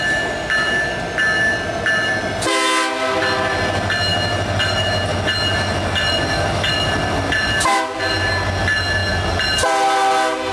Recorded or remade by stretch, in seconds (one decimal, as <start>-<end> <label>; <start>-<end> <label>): 0.0-10.5 recorded